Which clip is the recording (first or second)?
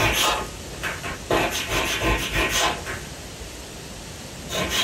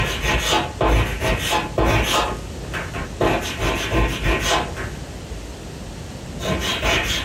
second